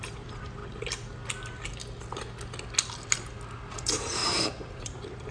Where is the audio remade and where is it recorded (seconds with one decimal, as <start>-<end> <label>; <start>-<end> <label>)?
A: 0.0-0.6 remade; 0.6-3.8 recorded; 3.8-5.3 remade